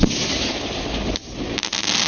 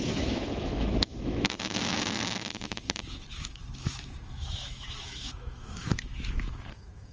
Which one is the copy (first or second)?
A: second